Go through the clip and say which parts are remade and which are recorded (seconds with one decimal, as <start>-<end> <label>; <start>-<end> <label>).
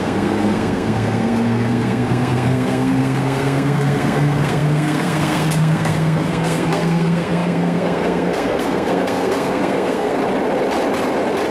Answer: 0.0-10.2 remade; 10.2-11.5 recorded